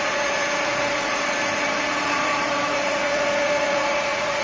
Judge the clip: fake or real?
fake